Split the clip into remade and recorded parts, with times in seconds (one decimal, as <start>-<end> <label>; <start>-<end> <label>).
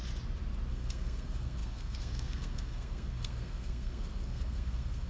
0.0-0.7 recorded; 0.7-5.1 remade